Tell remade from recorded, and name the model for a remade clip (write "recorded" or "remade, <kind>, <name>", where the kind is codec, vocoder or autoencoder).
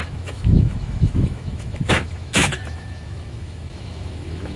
remade, autoencoder, DAC-VAE